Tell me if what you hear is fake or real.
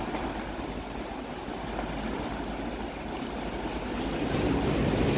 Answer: real